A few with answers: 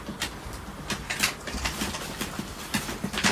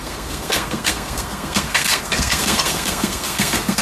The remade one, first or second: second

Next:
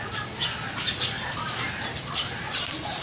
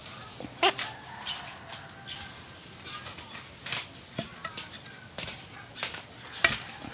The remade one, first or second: first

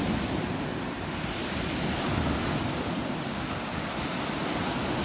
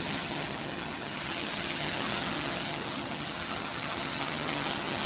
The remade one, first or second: second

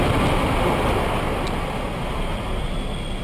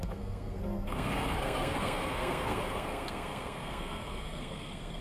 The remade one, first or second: second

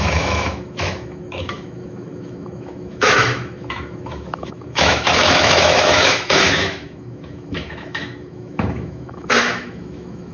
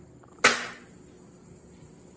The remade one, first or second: first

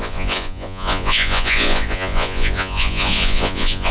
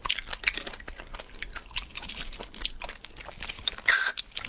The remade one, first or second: first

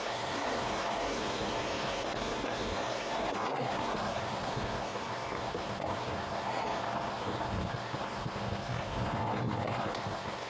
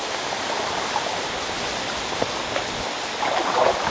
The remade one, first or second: first